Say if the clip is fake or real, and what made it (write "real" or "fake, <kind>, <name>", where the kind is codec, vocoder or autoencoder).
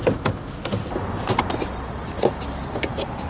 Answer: real